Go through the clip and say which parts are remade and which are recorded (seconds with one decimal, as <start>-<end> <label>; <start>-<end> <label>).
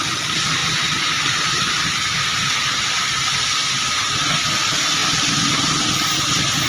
0.0-6.7 recorded